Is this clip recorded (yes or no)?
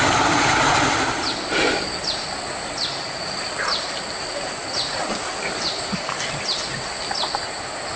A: yes